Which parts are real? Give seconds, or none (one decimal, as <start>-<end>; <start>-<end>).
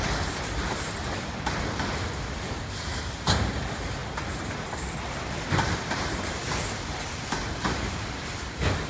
none